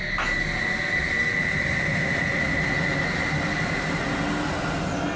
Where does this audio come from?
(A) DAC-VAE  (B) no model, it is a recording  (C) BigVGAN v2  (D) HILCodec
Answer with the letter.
B